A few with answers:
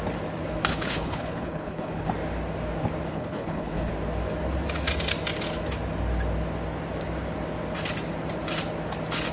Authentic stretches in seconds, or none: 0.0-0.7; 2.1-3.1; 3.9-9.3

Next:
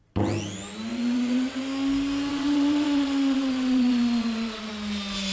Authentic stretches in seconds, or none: 0.0-0.9; 1.6-2.3; 4.7-5.3

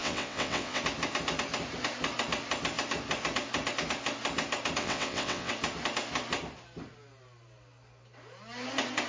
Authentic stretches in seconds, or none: 0.8-4.8; 5.5-9.1